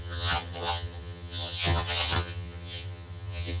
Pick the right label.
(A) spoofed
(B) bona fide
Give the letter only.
A